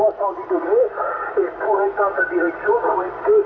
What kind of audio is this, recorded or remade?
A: recorded